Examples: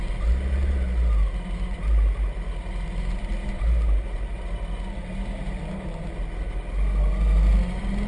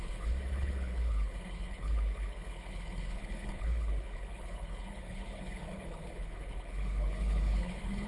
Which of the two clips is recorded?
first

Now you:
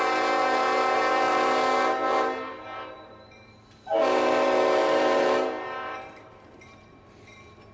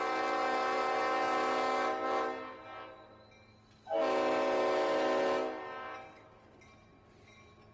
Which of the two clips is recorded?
second